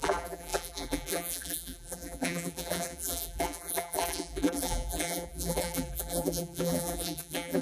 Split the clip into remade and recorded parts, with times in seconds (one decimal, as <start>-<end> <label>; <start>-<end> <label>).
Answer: 0.0-7.6 remade